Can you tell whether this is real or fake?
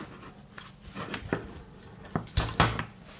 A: real